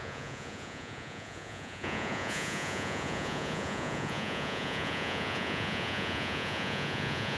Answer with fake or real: fake